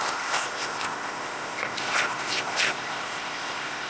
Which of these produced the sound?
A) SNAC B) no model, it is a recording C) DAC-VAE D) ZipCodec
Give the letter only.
D